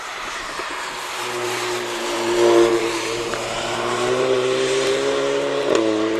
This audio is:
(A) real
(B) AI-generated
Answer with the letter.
B